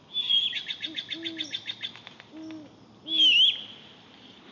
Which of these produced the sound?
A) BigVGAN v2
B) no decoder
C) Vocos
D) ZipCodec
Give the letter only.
B